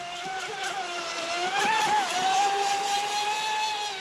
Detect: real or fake fake